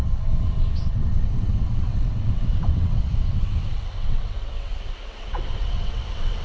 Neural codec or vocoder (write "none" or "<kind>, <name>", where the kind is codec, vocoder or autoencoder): vocoder, WaveNeXt